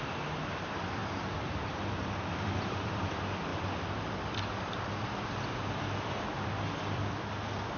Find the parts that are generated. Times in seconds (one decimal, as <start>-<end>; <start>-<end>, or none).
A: 0.0-7.8